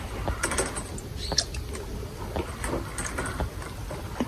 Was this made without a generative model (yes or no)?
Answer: yes